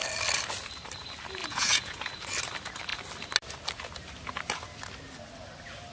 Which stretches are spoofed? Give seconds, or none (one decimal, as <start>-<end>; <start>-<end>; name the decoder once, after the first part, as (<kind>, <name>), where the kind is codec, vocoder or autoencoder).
1.4-2.1 (vocoder, Vocos)